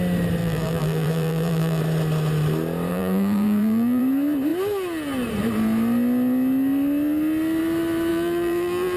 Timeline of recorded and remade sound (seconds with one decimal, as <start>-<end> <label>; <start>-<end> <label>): 0.0-0.4 recorded; 0.4-1.8 remade; 1.8-2.9 recorded; 2.9-4.0 remade; 4.0-8.1 recorded; 8.1-9.0 remade